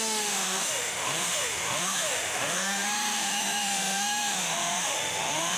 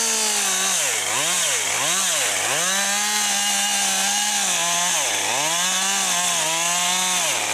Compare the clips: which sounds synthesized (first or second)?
first